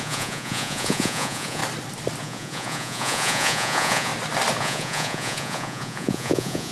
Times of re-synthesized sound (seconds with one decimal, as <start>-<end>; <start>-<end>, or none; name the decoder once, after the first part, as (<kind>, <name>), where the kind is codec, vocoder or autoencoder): 0.0-1.6 (vocoder, Vocos); 2.2-4.1; 4.6-6.7